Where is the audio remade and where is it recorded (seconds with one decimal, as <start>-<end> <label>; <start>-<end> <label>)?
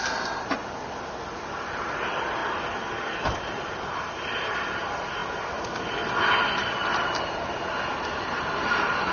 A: 0.0-0.6 remade; 0.6-1.2 recorded; 1.2-5.2 remade; 5.2-6.3 recorded; 6.3-6.9 remade; 6.9-8.0 recorded; 8.0-9.1 remade